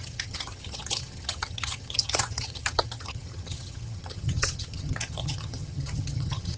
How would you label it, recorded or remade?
remade